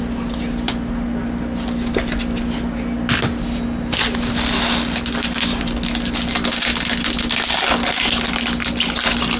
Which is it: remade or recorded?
recorded